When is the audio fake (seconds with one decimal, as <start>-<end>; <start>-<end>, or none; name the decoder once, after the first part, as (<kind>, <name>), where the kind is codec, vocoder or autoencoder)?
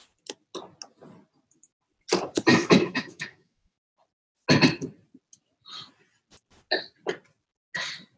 2.5-3.8 (autoencoder, DAC-VAE)